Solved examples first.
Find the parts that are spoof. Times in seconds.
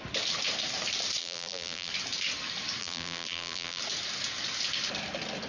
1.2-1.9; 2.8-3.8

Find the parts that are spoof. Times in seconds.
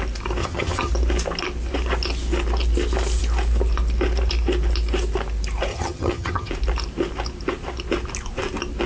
0.4-0.9; 5.7-6.5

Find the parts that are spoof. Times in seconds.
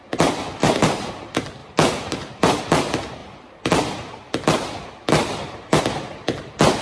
0.6-1.1; 1.6-2.6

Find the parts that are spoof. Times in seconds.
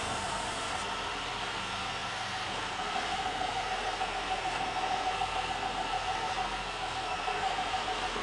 0.0-0.7; 1.4-8.2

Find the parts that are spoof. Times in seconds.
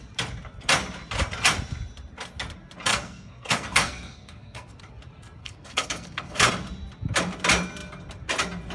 2.9-4.8; 5.4-6.5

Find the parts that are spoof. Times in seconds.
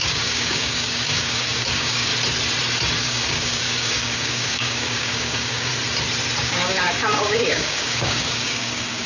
0.0-2.1; 3.0-5.7; 6.4-9.1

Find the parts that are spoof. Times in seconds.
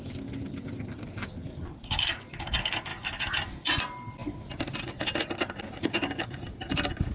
none